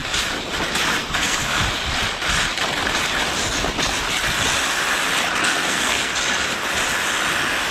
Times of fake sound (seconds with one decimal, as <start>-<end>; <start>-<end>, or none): 1.0-1.6; 5.4-6.1